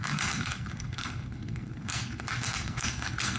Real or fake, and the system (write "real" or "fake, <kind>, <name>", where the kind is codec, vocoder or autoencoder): fake, codec, SNAC